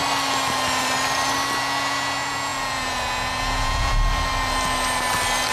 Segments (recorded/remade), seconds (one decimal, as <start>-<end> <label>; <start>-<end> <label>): 0.0-1.6 recorded; 1.6-3.9 remade; 3.9-5.5 recorded